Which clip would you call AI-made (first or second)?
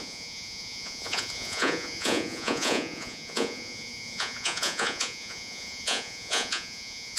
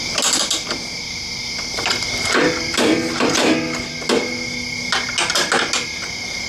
first